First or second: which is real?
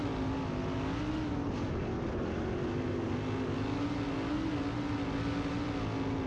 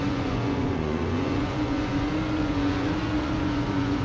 first